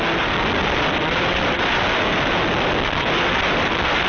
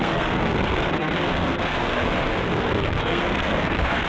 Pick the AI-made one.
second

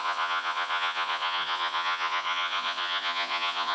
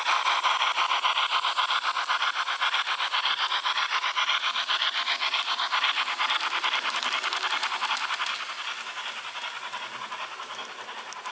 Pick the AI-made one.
first